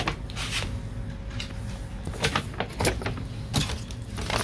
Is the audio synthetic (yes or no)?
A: no